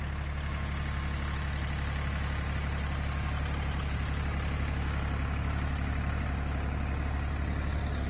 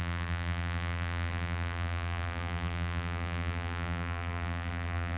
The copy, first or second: second